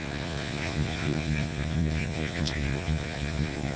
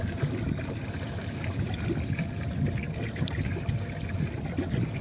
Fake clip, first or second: first